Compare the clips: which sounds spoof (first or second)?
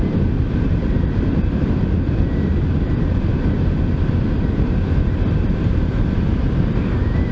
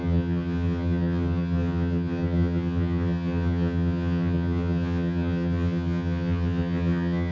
second